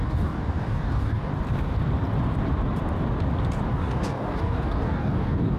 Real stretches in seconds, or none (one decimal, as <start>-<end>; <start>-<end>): 1.3-3.7